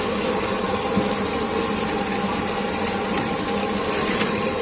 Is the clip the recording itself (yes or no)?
yes